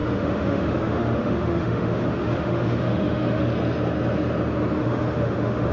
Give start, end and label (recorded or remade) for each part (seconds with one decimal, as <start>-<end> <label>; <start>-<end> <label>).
0.0-3.4 remade; 3.4-4.8 recorded; 4.8-5.7 remade